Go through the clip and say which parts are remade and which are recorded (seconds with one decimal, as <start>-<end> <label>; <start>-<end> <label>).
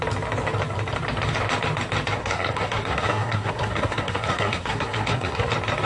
0.0-2.2 recorded; 2.2-5.5 remade; 5.5-5.9 recorded